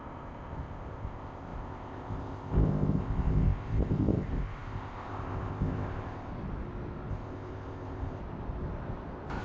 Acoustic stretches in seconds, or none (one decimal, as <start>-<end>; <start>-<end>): 6.3-7.1; 8.2-9.4